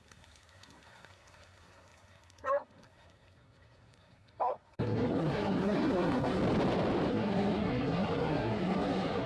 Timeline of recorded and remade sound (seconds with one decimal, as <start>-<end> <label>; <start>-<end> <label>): 0.0-6.4 remade; 6.4-7.1 recorded; 7.1-9.3 remade

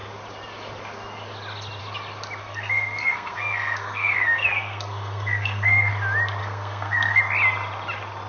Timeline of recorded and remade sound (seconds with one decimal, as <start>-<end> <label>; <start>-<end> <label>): 0.0-2.4 recorded; 2.4-5.9 remade; 5.9-6.4 recorded; 6.4-7.2 remade; 7.2-8.3 recorded

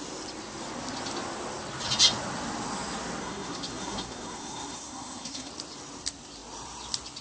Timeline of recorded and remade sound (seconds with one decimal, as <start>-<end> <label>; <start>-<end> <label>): 0.0-3.2 recorded; 3.2-5.5 remade; 5.5-7.2 recorded